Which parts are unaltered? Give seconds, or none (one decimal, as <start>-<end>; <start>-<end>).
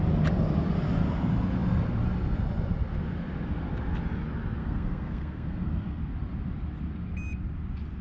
0.0-4.6; 6.0-8.0